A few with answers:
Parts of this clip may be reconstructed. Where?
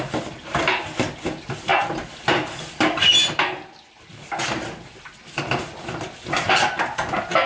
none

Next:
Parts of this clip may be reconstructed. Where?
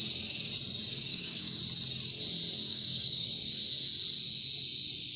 1.1-1.6 (codec, DAC); 2.7-3.6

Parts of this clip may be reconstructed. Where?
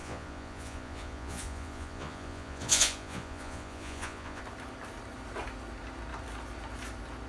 0.0-4.4 (vocoder, Vocos)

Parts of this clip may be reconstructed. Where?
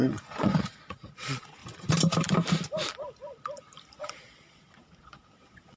0.0-1.6 (vocoder, Vocos); 4.0-5.8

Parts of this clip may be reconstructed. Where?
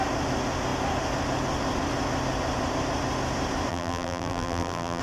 3.7-5.0 (vocoder, BigVGAN v2)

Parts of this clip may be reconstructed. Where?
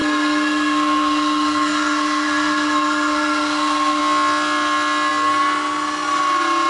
0.0-4.0 (codec, SNAC)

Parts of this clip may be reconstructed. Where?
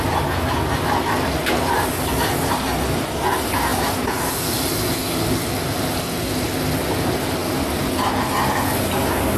none